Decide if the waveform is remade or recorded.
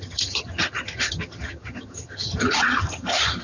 remade